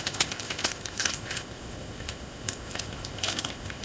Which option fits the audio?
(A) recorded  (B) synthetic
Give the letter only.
B